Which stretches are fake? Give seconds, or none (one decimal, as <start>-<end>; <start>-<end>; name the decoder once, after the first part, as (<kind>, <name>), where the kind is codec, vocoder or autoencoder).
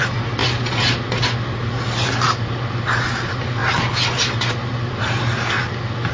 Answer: none